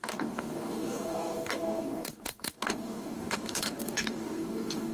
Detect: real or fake fake